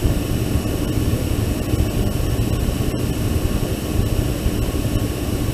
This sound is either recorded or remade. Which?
recorded